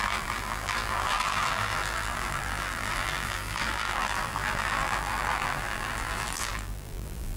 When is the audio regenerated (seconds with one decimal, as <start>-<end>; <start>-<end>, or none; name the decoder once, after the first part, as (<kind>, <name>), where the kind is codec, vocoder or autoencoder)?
0.0-7.4 (vocoder, BigVGAN v2)